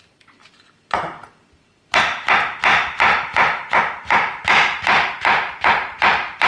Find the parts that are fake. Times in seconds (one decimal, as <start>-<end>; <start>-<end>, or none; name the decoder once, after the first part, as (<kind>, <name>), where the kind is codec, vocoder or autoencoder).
none